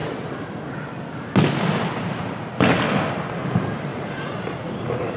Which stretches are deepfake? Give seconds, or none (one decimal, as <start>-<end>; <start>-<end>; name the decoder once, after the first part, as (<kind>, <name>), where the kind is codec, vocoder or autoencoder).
3.9-4.7 (vocoder, Vocos)